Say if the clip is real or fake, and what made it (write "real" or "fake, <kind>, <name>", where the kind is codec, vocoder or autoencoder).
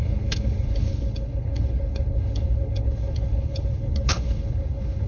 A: fake, codec, HILCodec